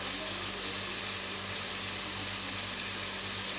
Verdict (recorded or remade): recorded